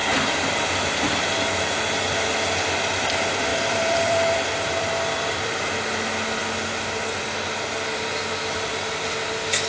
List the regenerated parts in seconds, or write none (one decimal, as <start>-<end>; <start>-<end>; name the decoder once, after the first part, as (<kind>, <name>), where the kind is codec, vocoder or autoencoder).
3.5-5.7 (vocoder, BigVGAN v2)

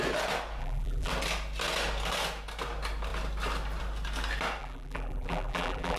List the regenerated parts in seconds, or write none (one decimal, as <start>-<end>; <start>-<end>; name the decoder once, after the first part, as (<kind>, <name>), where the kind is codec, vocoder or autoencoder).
0.6-1.1 (vocoder, BigVGAN v2); 4.6-6.0

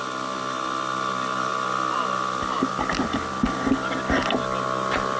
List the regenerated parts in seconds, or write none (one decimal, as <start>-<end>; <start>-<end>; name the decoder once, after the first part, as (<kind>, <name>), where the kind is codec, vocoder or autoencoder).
none

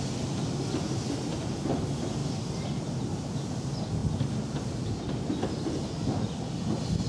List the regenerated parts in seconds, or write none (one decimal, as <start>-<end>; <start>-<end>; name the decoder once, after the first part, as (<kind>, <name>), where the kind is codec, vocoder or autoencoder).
2.2-3.3 (vocoder, BigVGAN v2)

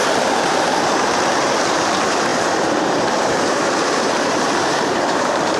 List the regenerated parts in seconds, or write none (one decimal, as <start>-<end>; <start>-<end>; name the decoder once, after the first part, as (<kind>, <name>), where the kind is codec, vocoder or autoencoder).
0.0-5.6 (vocoder, BigVGAN v2)

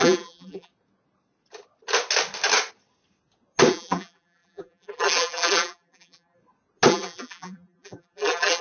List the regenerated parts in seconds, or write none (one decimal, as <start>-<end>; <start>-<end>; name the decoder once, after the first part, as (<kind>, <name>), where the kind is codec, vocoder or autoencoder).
0.0-0.7 (vocoder, BigVGAN v2); 3.7-6.4; 6.9-8.6

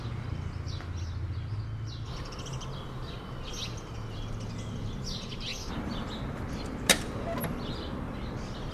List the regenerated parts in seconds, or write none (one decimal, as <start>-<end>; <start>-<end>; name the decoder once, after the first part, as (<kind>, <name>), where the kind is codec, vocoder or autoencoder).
5.5-6.2 (vocoder, BigVGAN v2)

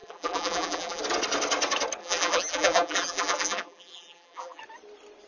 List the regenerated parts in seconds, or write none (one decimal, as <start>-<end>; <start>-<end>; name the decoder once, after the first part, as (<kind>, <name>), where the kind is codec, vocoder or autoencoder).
0.0-1.0 (vocoder, BigVGAN v2); 2.0-4.6